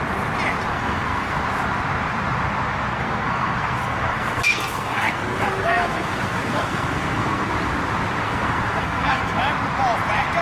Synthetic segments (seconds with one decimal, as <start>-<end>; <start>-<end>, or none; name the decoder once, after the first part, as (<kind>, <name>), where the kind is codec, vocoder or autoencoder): 0.7-1.4 (codec, SNAC); 2.9-7.5; 8.2-9.4

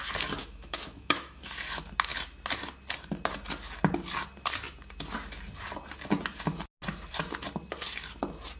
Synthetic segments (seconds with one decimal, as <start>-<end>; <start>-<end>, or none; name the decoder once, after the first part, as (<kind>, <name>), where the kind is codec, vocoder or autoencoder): 0.4-1.5 (autoencoder, DAC-VAE)